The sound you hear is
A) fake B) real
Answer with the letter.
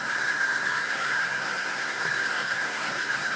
A